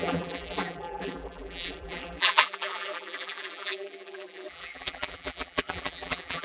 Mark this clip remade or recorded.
remade